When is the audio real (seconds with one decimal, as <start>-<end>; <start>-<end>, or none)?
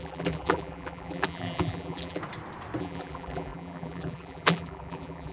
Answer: 2.2-2.8